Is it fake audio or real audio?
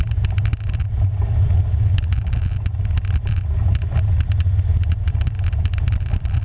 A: real